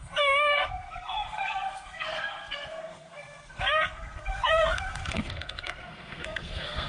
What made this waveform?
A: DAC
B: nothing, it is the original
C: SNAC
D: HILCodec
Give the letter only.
C